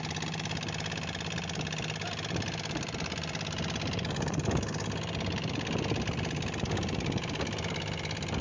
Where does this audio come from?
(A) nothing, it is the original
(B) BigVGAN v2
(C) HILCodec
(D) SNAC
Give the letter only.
A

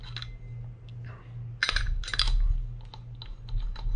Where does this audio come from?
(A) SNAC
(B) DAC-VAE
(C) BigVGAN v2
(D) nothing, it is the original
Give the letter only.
D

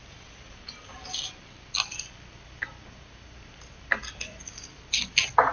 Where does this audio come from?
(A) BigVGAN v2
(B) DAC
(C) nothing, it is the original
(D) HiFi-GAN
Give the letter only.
C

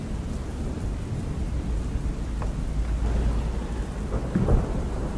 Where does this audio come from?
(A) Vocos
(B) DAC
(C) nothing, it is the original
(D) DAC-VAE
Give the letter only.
C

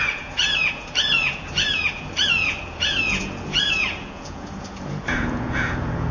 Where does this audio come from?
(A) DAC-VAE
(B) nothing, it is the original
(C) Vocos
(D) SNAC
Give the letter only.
C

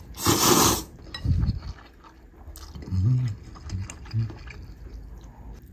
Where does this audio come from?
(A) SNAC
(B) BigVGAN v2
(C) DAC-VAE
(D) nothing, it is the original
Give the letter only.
D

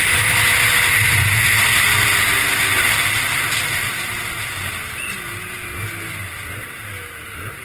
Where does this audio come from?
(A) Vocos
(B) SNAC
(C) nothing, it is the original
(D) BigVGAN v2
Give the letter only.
C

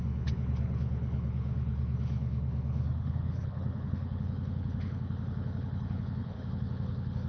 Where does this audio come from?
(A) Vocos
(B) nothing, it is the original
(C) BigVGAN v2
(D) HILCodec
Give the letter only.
D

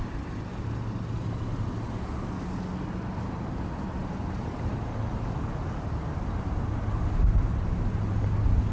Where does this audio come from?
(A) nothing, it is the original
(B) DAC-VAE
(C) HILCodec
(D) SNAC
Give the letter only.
A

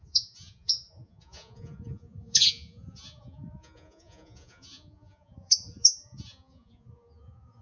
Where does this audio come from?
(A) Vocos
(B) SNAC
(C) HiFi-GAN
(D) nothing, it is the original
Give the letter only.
A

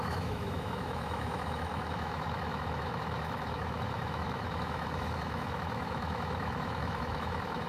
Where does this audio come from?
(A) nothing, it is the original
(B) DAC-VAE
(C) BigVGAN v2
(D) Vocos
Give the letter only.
B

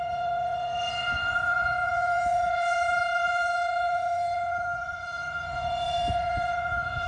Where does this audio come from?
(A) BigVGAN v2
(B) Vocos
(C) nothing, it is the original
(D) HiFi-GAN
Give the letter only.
B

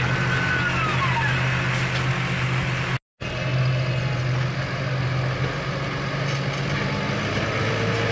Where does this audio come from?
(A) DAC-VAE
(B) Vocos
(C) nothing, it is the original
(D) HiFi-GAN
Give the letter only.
C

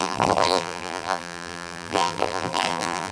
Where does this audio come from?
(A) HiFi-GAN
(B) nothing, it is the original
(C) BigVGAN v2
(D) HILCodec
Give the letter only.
C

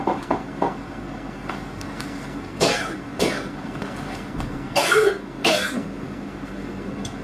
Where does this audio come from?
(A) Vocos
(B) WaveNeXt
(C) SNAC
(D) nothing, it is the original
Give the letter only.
C